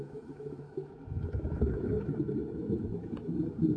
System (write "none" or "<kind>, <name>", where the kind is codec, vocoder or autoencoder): autoencoder, DAC-VAE